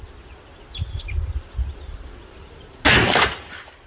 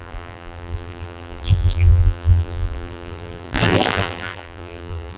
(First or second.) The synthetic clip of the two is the second